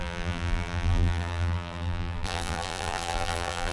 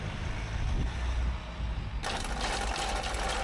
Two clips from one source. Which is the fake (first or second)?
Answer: first